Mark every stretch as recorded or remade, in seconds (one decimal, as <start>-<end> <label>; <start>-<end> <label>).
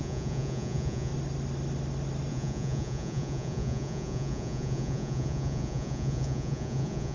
0.0-1.1 remade; 1.1-2.3 recorded; 2.3-7.1 remade